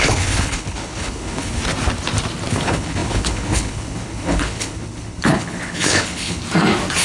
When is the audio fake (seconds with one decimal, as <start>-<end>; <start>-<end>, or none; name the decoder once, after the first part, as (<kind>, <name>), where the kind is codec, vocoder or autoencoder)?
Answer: 0.0-1.6 (codec, HILCodec); 2.5-6.4